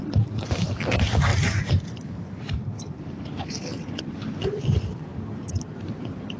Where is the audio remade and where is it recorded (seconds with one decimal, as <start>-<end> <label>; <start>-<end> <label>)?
0.0-1.3 recorded; 1.3-3.2 remade; 3.2-5.1 recorded; 5.1-6.0 remade; 6.0-6.4 recorded